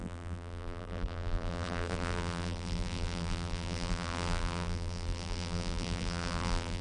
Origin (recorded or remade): remade